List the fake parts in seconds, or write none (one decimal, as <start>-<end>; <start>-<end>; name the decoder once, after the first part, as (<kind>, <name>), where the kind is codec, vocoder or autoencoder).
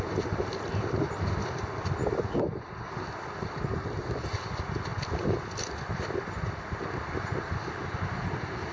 none